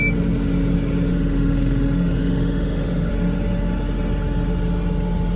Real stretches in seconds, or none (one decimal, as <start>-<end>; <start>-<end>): 0.0-1.1; 3.1-5.4